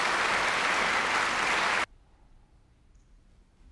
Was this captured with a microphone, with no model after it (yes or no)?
yes